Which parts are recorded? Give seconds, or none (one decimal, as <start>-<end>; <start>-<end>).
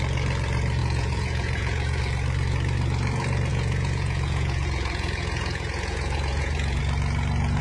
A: 0.0-0.8; 2.0-3.5; 6.8-7.6